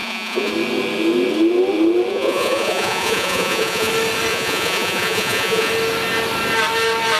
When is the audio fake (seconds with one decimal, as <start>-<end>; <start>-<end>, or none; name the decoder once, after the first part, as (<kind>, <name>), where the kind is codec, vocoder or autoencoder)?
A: 0.0-0.5 (vocoder, Vocos); 2.1-3.9; 4.3-5.7